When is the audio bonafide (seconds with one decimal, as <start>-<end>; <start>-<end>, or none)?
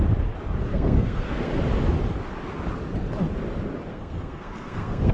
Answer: 0.0-0.7; 1.5-3.9